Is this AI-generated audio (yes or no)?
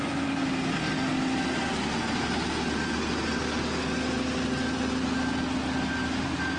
no